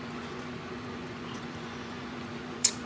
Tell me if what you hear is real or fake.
fake